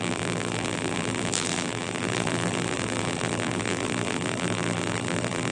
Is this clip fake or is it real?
fake